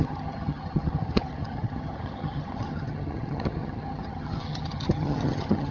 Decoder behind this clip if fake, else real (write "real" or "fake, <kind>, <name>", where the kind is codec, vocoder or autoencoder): fake, vocoder, HiFi-GAN